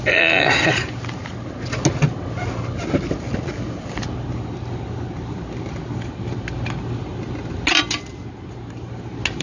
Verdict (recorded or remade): recorded